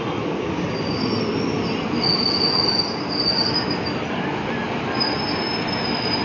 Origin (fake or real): real